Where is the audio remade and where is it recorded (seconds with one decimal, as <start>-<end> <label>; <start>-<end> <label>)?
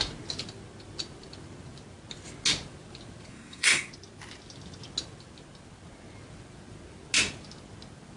0.0-3.3 recorded; 3.3-3.9 remade; 3.9-8.2 recorded